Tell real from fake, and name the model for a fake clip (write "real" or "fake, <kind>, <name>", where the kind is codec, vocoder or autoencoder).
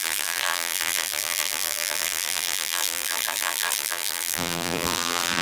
fake, vocoder, BigVGAN v2